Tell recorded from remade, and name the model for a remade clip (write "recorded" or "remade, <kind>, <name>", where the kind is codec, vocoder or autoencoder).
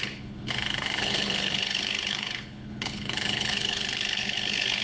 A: remade, codec, HILCodec